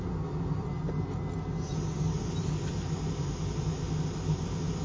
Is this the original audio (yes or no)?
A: yes